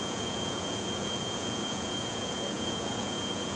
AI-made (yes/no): yes